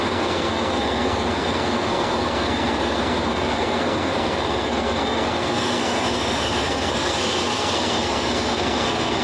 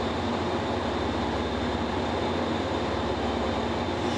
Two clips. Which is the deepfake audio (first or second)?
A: first